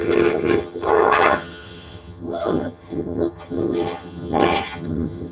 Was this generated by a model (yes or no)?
yes